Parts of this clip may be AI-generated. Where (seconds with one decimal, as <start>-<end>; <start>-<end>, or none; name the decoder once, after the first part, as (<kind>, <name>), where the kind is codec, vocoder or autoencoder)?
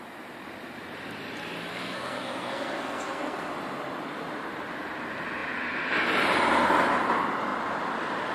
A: 1.7-3.5 (codec, SNAC)